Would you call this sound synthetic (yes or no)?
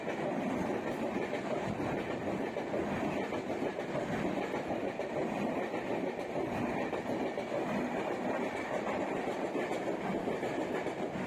yes